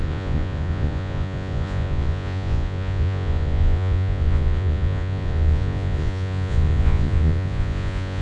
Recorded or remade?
remade